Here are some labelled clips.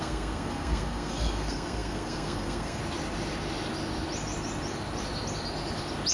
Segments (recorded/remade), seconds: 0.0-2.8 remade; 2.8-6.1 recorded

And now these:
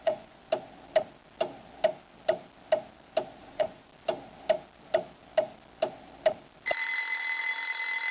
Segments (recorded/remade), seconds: 0.0-0.4 remade; 0.4-3.4 recorded; 3.4-3.9 remade; 3.9-8.1 recorded

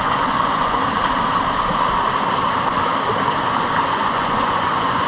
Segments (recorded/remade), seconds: 0.0-0.8 remade; 0.8-3.9 recorded; 3.9-5.1 remade

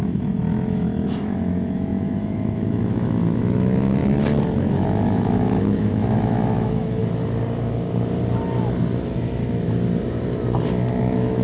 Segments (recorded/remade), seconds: 0.0-4.0 remade; 4.0-4.6 recorded; 4.6-7.0 remade; 7.0-11.0 recorded; 11.0-11.4 remade

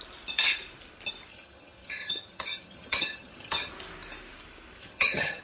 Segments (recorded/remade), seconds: 0.0-1.3 recorded; 1.3-3.7 remade; 3.7-4.8 recorded; 4.8-5.4 remade

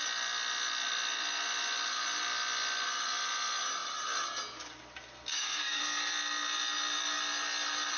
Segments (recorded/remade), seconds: 0.0-5.3 recorded; 5.3-5.8 remade; 5.8-8.0 recorded

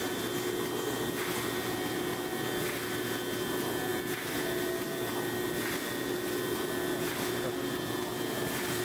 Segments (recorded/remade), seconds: 0.0-8.8 recorded

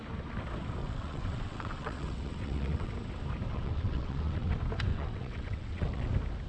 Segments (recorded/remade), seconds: 0.0-0.8 recorded; 0.8-2.9 remade; 2.9-3.5 recorded; 3.5-4.5 remade; 4.5-4.9 recorded; 4.9-6.1 remade; 6.1-6.5 recorded